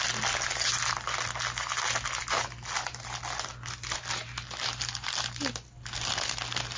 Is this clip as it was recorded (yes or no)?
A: yes